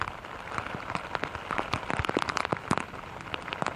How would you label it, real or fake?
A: real